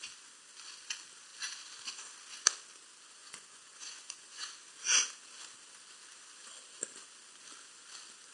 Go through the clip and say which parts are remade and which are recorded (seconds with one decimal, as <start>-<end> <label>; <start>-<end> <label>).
0.0-3.2 recorded; 3.2-4.5 remade; 4.5-8.3 recorded